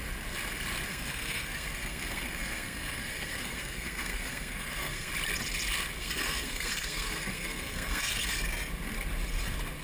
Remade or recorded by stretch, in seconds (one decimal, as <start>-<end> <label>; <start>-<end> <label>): 0.0-0.9 recorded; 0.9-5.1 remade; 5.1-6.0 recorded; 6.0-8.5 remade; 8.5-9.8 recorded